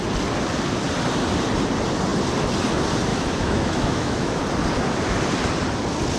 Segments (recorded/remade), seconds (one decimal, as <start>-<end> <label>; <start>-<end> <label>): 0.0-3.1 recorded; 3.1-4.4 remade; 4.4-6.2 recorded